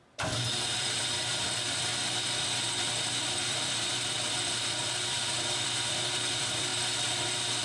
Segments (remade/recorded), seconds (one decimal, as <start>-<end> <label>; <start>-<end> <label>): 0.0-6.7 remade; 6.7-7.6 recorded